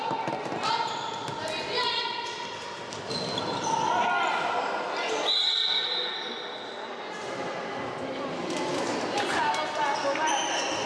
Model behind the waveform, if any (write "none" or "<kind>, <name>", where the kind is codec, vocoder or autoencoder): none